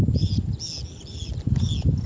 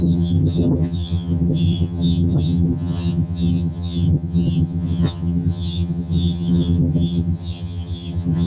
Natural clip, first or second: first